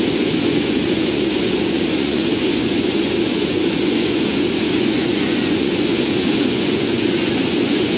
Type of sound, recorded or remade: remade